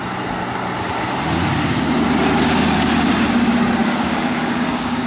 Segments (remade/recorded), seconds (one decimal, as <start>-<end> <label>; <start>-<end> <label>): 0.0-3.8 recorded; 3.8-5.1 remade